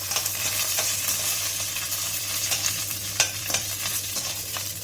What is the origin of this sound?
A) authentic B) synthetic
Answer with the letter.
B